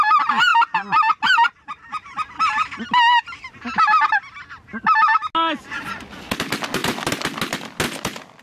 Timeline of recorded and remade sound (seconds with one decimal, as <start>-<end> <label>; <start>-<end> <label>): 0.0-8.4 recorded